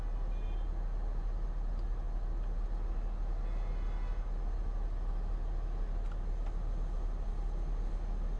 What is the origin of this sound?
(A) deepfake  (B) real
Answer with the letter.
B